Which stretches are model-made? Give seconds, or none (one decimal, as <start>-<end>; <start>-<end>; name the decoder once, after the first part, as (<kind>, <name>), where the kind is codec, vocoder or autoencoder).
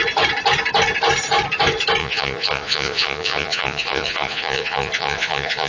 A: 2.0-5.7 (vocoder, Vocos)